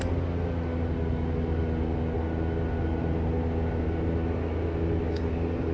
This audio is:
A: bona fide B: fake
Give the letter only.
A